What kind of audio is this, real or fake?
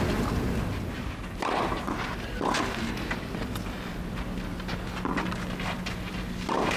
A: real